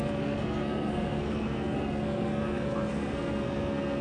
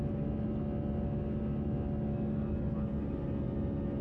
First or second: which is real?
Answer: second